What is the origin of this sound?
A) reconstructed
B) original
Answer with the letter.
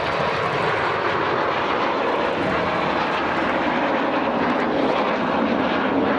B